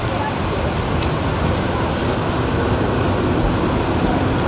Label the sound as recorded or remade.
recorded